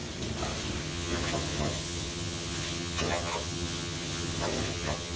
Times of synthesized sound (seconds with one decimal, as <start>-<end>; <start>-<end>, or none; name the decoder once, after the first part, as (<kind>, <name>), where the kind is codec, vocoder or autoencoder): 0.8-5.2 (vocoder, HiFi-GAN)